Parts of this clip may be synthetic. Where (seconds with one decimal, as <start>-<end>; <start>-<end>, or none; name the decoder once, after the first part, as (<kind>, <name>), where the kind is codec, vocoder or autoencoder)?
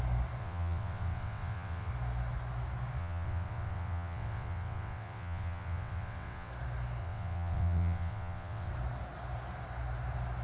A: 0.4-1.9 (vocoder, WaveNeXt); 3.0-6.5; 7.0-8.7